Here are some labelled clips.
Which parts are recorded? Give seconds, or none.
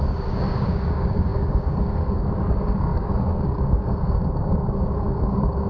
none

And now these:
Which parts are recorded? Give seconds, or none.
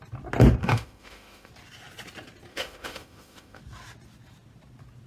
0.0-0.6; 1.5-2.5; 3.6-5.1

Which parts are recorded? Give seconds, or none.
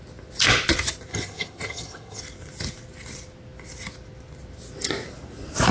0.0-1.1; 2.2-5.7